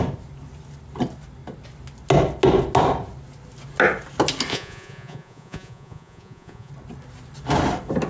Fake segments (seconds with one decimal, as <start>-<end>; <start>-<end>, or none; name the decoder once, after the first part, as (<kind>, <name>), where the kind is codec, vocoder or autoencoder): 4.5-6.7 (vocoder, Vocos)